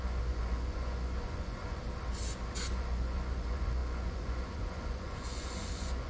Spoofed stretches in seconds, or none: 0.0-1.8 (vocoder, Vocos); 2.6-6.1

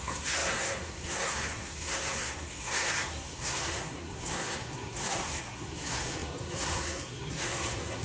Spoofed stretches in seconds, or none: 0.0-8.0 (codec, SNAC)

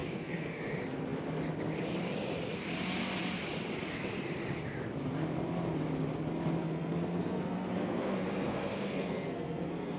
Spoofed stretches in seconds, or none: 0.0-0.6 (codec, SNAC); 6.6-10.0

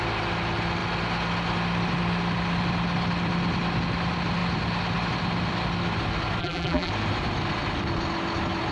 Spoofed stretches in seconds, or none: 6.4-6.9 (vocoder, BigVGAN v2)

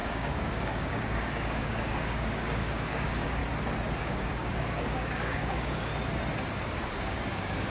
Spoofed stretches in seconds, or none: 0.0-3.4 (codec, DAC); 4.0-5.9; 6.9-7.7

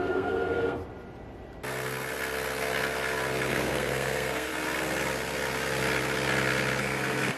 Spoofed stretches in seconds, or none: 0.0-0.8 (codec, SNAC); 3.5-4.5; 6.8-7.4

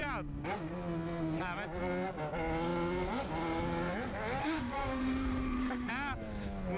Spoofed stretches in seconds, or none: 4.4-5.9 (autoencoder, DAC-VAE)

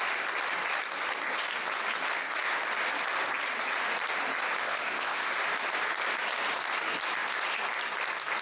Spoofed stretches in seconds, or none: 4.6-5.3 (codec, ZipCodec)